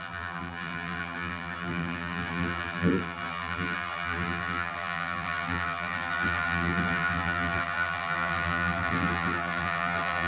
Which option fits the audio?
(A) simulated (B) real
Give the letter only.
A